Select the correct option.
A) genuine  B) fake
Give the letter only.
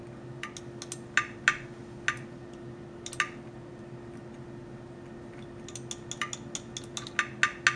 A